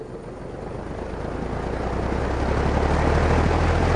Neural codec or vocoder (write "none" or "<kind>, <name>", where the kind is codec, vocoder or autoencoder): none